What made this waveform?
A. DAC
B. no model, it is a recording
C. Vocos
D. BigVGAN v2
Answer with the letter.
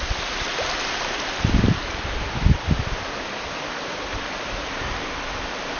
B